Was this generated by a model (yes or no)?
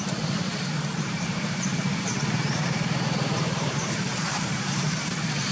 yes